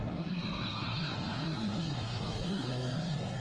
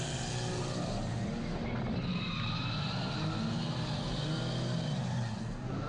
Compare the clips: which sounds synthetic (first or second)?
first